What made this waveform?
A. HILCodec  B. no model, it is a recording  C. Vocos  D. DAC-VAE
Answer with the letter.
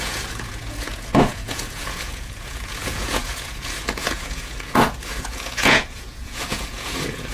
C